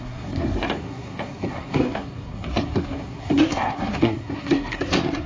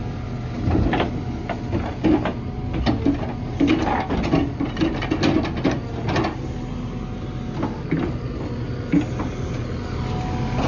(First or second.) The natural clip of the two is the second